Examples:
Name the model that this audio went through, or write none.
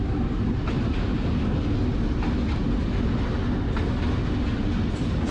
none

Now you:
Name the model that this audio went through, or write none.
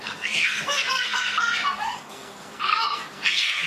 codec, SNAC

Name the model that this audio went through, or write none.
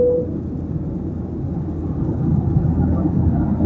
none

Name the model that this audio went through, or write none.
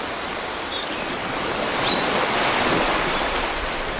none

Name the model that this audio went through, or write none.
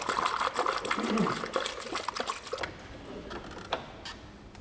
none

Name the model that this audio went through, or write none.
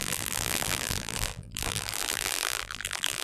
vocoder, BigVGAN v2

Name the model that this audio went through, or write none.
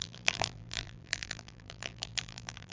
vocoder, BigVGAN v2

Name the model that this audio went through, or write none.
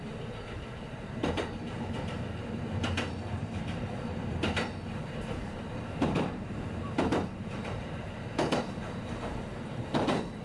vocoder, BigVGAN v2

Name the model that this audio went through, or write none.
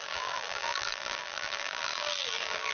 vocoder, BigVGAN v2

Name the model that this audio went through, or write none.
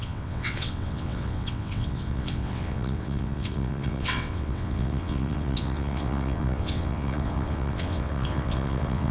vocoder, WaveNeXt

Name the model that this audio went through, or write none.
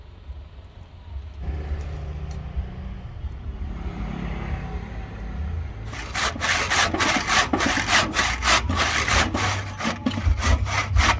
none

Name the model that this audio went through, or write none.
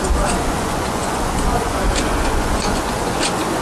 vocoder, Vocos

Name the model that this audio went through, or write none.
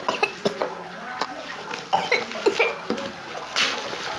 none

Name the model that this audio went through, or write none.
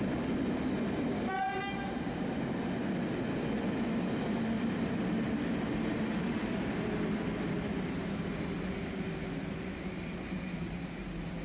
none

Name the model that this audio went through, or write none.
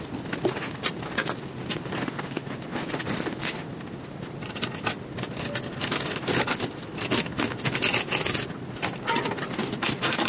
none